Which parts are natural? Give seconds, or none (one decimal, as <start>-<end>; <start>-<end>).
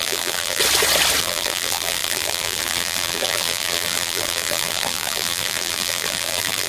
0.6-1.2